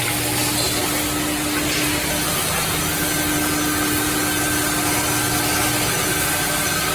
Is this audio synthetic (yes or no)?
no